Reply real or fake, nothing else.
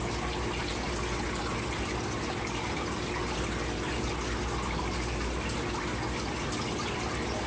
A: real